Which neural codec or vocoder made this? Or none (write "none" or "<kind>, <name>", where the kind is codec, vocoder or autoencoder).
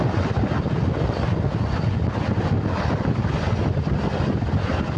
none